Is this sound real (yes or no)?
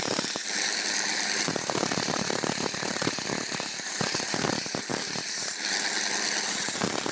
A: yes